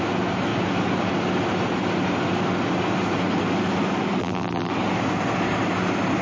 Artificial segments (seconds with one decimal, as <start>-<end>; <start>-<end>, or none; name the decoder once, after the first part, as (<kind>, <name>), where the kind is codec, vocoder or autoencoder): 4.2-4.7 (vocoder, BigVGAN v2)